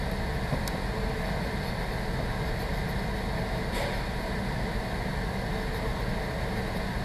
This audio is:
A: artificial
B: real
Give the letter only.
B